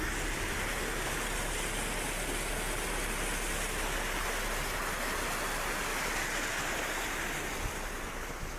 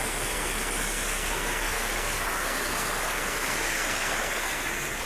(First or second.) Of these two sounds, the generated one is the second